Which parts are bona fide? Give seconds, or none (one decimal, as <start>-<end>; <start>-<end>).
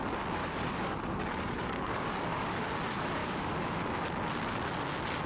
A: 0.0-0.4; 2.7-3.2; 3.8-5.3